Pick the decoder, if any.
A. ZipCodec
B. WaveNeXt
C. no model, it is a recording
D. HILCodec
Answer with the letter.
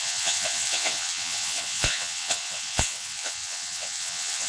B